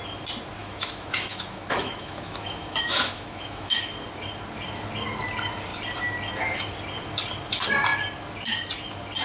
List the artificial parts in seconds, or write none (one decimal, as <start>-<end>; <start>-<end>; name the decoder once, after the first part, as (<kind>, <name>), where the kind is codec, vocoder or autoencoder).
0.6-3.9 (autoencoder, DAC-VAE)